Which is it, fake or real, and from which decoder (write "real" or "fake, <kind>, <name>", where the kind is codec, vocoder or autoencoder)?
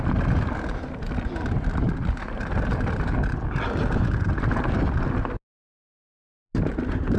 real